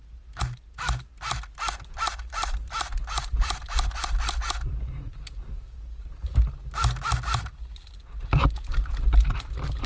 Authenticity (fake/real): real